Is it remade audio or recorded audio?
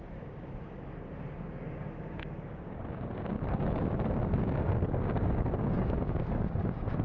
remade